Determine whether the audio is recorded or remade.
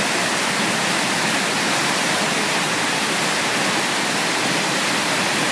recorded